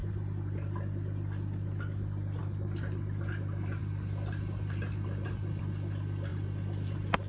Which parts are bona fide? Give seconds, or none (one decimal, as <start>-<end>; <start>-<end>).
0.0-7.3

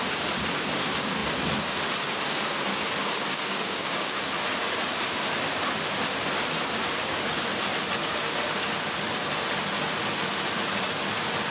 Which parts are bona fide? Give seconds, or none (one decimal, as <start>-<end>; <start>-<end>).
0.0-3.0; 4.2-11.5

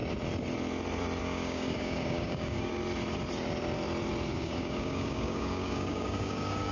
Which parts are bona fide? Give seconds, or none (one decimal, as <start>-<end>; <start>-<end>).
0.0-1.2; 2.7-4.4

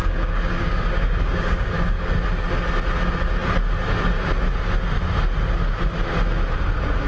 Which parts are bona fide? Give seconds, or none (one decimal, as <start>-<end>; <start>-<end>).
2.1-7.1

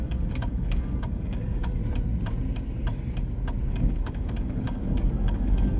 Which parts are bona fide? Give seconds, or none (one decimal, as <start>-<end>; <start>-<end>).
1.8-3.7

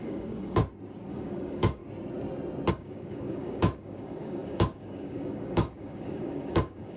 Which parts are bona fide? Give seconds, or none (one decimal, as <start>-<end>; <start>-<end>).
0.6-1.1; 1.8-2.7

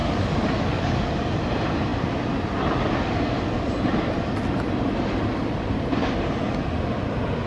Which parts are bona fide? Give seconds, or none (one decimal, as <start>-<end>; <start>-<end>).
1.0-7.5